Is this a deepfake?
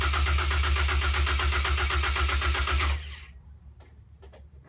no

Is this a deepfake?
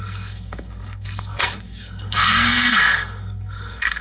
yes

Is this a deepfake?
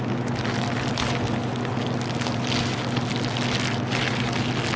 no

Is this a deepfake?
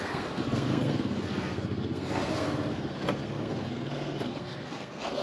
yes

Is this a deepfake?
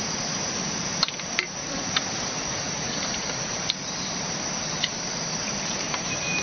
yes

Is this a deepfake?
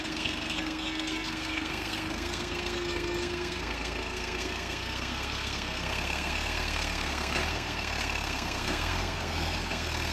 yes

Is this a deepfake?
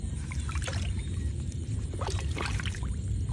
yes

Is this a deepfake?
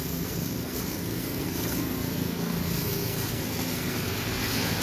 yes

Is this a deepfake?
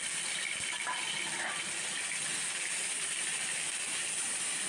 no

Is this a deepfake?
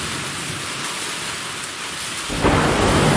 no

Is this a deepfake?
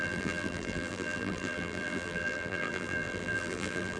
yes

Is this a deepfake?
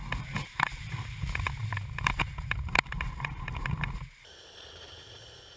yes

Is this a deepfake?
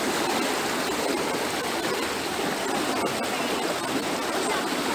no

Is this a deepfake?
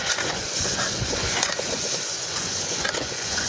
yes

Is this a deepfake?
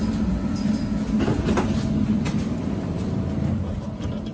no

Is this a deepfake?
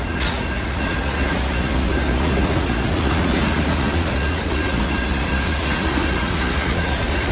yes